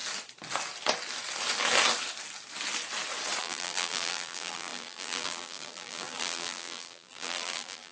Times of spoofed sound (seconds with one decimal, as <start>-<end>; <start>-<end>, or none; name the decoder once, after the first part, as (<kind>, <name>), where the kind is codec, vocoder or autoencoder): 3.4-7.9 (vocoder, BigVGAN v2)